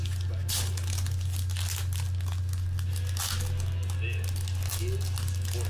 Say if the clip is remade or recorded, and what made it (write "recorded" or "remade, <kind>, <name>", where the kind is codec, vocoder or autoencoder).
recorded